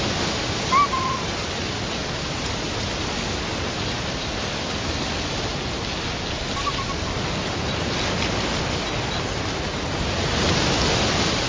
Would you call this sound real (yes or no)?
yes